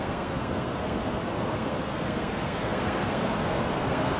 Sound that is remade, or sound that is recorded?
remade